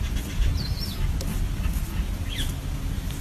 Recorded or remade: recorded